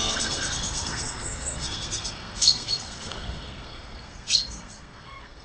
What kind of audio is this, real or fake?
fake